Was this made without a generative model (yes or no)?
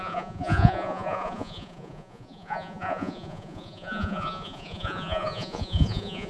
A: no